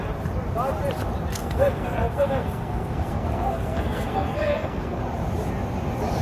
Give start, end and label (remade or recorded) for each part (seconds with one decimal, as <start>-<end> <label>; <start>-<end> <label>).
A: 0.0-1.3 recorded; 1.3-5.0 remade; 5.0-6.2 recorded